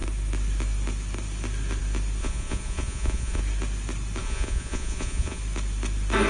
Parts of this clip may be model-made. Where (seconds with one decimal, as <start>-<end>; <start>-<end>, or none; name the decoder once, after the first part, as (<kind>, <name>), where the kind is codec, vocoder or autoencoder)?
2.2-3.4 (vocoder, Vocos); 4.2-5.4